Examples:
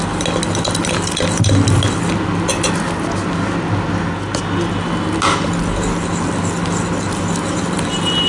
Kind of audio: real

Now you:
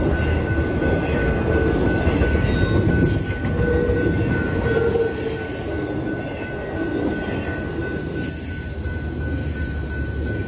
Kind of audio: real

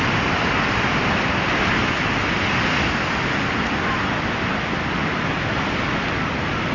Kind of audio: real